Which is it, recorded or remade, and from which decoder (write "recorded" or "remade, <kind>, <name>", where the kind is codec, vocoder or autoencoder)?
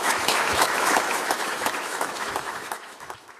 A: remade, autoencoder, DAC-VAE